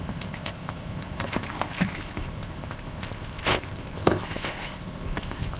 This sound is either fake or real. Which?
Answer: fake